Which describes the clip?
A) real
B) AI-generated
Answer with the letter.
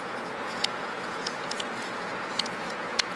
B